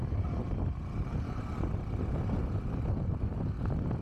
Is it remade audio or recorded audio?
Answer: recorded